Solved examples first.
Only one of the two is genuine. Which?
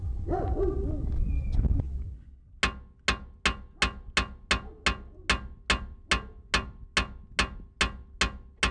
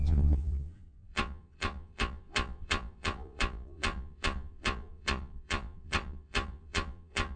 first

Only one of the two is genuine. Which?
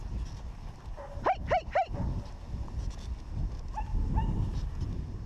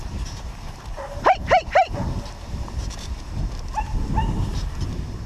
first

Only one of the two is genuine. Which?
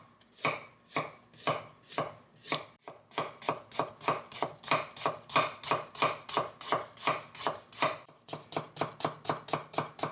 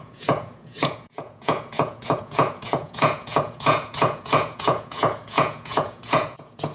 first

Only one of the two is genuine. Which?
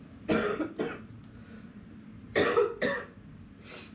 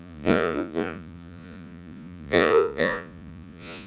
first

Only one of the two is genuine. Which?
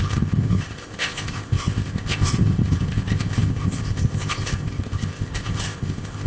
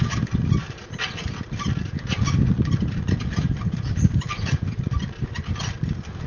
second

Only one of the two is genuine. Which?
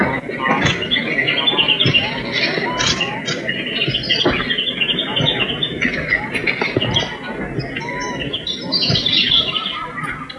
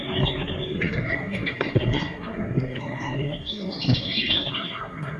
first